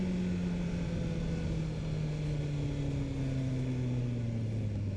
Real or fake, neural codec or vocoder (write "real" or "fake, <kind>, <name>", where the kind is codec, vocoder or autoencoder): real